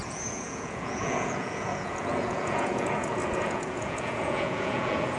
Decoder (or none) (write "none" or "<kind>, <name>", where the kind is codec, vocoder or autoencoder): vocoder, Vocos